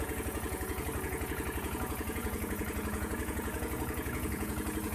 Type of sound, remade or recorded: remade